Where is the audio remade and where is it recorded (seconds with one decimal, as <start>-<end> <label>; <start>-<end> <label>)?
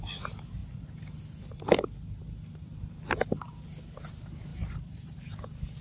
0.0-4.5 recorded; 4.5-5.2 remade; 5.2-5.8 recorded